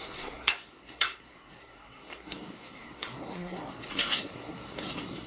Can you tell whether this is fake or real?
fake